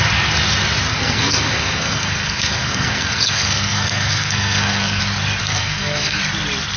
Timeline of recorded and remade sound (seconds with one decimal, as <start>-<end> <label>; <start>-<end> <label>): 0.0-0.9 recorded; 0.9-5.0 remade; 5.0-5.4 recorded; 5.4-6.2 remade; 6.2-6.8 recorded